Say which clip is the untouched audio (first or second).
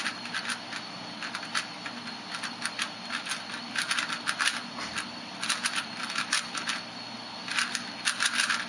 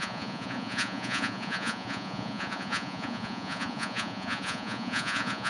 first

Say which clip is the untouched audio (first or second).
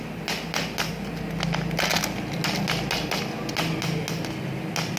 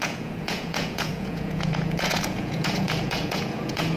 first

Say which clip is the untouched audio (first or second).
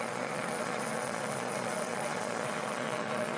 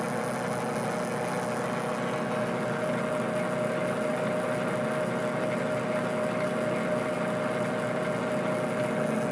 second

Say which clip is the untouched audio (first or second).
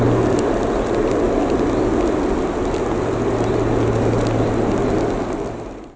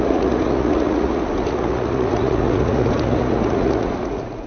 first